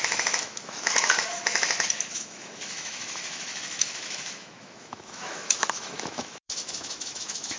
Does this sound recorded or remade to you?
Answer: remade